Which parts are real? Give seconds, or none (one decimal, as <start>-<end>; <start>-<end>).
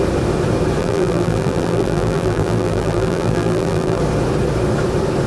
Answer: 0.0-0.8; 4.0-5.3